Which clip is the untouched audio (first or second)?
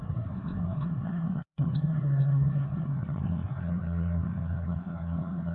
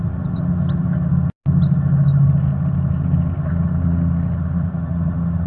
second